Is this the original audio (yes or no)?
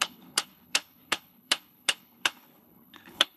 no